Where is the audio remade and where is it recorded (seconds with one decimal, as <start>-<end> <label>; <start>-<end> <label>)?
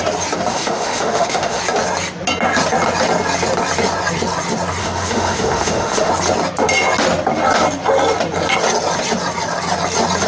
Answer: 0.0-0.5 recorded; 0.5-1.6 remade; 1.6-4.8 recorded; 4.8-6.1 remade; 6.1-10.3 recorded